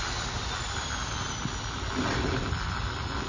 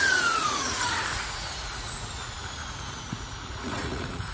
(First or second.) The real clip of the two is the first